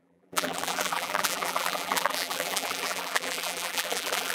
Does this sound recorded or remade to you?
remade